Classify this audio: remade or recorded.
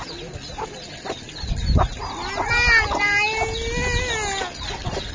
recorded